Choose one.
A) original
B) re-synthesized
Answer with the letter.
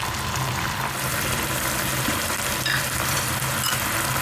B